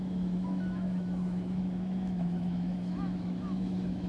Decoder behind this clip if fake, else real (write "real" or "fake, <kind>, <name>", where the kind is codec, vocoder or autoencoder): fake, autoencoder, DAC-VAE